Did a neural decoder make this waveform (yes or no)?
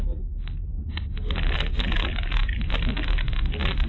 no